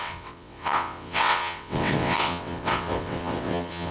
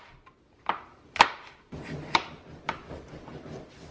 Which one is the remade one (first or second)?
first